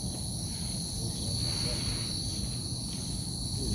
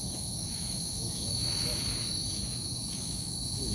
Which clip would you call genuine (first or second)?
first